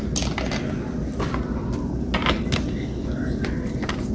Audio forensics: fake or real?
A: real